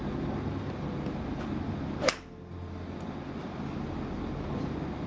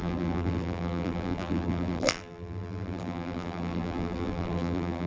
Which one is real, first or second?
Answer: first